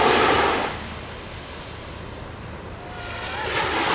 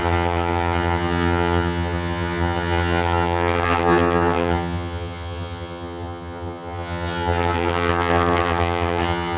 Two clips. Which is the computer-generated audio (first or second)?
second